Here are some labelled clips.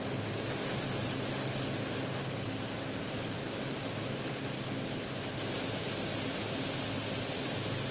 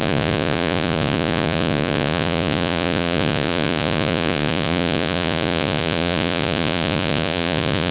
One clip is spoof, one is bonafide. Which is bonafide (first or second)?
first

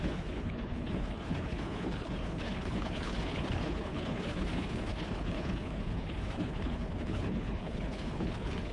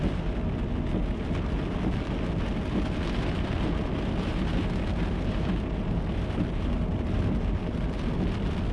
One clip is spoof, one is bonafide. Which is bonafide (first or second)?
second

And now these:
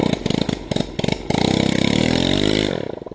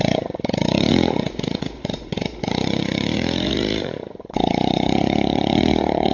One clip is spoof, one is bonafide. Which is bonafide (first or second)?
first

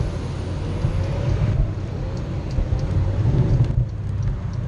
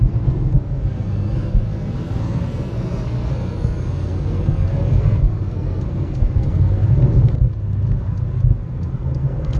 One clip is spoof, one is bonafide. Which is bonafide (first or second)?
first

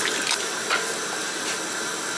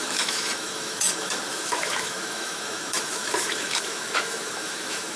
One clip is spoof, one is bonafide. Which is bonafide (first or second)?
first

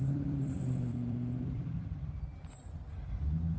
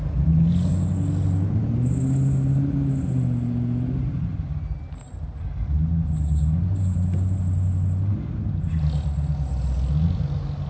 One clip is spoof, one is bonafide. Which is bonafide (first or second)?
second